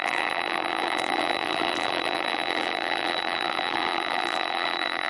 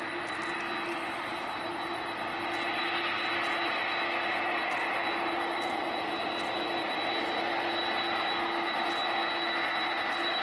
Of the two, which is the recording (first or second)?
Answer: second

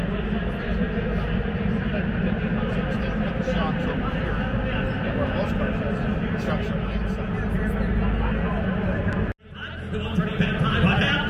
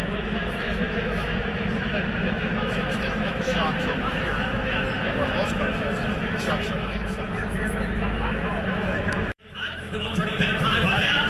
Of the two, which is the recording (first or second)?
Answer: first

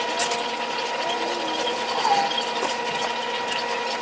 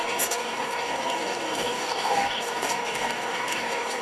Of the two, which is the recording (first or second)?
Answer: first